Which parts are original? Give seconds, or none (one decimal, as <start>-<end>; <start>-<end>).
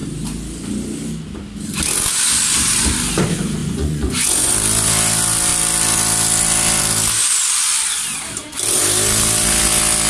0.0-3.6; 4.5-10.1